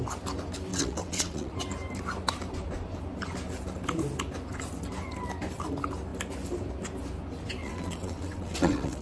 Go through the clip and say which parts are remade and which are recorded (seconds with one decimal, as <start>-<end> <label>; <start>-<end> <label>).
0.0-0.7 recorded; 0.7-1.5 remade; 1.5-7.6 recorded; 7.6-9.0 remade